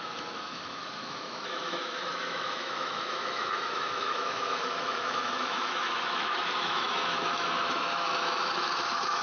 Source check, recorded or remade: remade